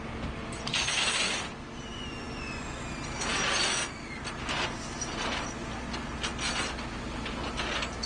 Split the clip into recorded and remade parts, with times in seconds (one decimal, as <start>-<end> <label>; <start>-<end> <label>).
0.0-1.9 recorded; 1.9-2.8 remade; 2.8-8.1 recorded